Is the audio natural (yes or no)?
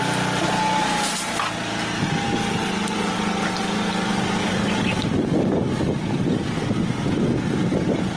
yes